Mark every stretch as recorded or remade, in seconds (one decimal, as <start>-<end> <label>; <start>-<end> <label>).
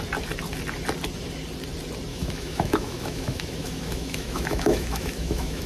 0.0-2.1 recorded; 2.1-5.7 remade